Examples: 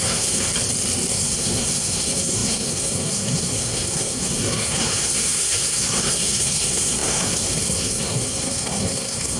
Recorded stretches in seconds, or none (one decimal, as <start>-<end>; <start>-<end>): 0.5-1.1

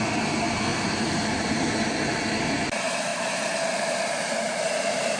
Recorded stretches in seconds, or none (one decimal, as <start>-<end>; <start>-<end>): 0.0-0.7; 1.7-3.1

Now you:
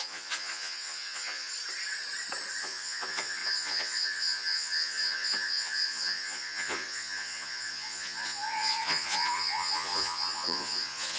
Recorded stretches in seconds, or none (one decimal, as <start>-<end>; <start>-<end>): 1.5-2.6

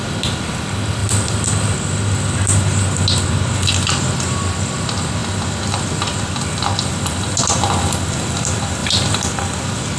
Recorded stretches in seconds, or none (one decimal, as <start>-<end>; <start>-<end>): 0.0-1.0; 1.8-5.2; 5.9-8.8; 9.6-10.0